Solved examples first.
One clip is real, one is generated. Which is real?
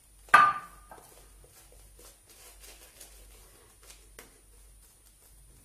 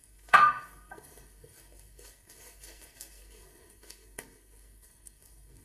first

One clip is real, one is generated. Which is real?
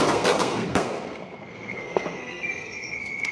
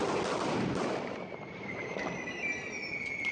second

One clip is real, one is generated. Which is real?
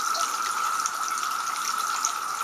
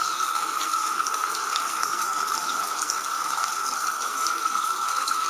first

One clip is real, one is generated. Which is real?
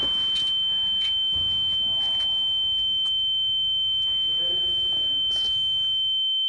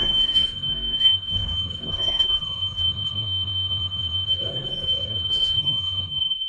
first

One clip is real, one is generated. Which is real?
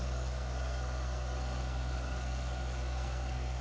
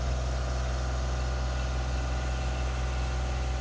second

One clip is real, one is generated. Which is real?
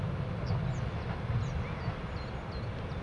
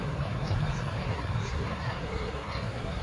first